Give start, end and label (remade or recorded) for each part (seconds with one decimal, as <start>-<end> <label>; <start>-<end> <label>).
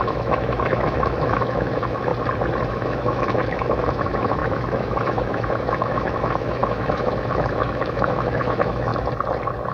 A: 0.0-2.1 remade; 2.1-2.7 recorded; 2.7-8.9 remade; 8.9-9.7 recorded